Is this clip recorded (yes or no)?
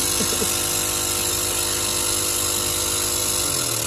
yes